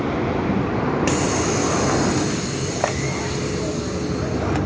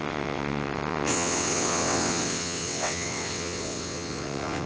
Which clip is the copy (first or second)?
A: second